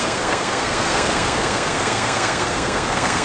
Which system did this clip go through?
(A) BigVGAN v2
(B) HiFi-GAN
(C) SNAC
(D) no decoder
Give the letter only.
C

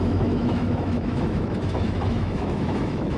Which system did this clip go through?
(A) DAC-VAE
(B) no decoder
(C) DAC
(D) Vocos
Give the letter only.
A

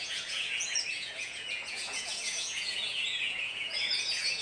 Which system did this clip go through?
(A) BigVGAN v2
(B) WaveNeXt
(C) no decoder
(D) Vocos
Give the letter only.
D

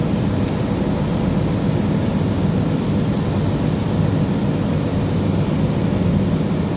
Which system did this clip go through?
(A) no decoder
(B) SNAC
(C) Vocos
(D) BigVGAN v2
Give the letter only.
A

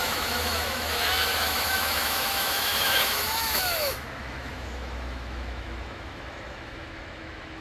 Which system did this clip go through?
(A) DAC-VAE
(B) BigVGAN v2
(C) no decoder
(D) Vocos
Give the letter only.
A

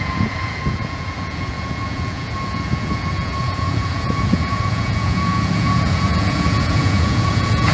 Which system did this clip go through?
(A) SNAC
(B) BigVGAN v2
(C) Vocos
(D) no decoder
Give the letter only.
C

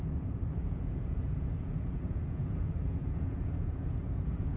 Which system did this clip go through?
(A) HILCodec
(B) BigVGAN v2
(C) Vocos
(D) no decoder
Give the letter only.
C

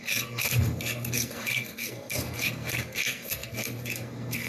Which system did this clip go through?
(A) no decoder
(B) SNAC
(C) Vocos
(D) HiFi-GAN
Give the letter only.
B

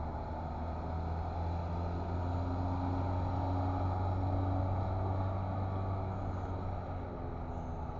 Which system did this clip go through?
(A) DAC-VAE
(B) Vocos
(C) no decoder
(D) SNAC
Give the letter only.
C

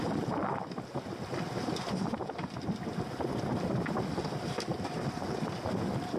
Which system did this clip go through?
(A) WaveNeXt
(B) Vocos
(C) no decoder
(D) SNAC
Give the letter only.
C